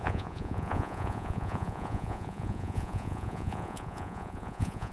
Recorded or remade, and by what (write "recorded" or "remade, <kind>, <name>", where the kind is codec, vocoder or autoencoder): remade, vocoder, Vocos